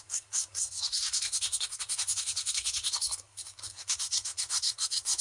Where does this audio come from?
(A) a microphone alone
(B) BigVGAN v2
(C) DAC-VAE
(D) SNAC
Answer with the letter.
D